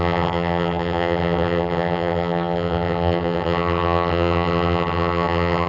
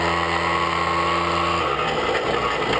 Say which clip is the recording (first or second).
second